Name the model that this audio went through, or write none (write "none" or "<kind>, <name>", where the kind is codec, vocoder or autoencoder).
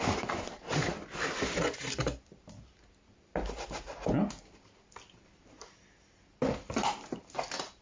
none